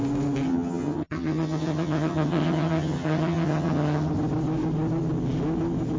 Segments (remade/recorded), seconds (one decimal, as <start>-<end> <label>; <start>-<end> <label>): 0.0-0.5 recorded; 0.5-4.1 remade; 4.1-6.0 recorded